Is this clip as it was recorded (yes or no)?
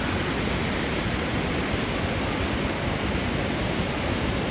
yes